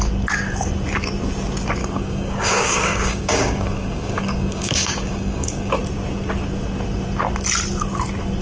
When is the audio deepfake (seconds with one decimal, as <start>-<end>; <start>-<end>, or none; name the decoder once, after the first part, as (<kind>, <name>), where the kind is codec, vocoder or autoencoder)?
1.8-5.8 (codec, DAC)